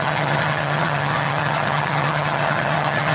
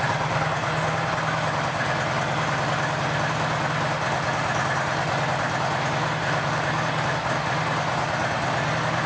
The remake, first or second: first